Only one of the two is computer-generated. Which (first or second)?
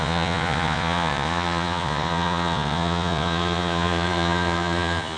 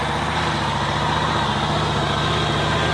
first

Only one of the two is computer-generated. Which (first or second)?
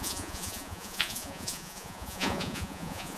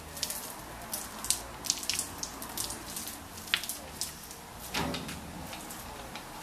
first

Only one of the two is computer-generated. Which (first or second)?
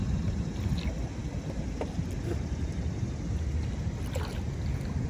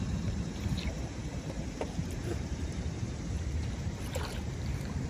second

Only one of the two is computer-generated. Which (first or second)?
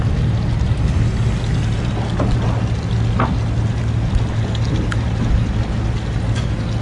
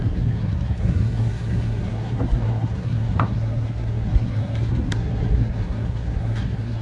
second